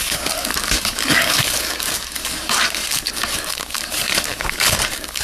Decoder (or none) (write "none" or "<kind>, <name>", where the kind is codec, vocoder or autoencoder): codec, DAC